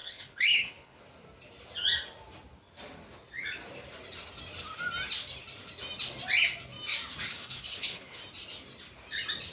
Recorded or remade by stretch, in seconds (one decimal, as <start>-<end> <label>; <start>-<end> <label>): 0.0-1.0 remade; 1.0-7.3 recorded; 7.3-8.2 remade; 8.2-9.5 recorded